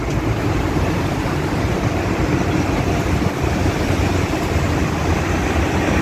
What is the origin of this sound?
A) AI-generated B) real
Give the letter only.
B